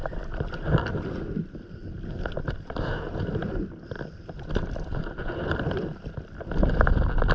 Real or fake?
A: fake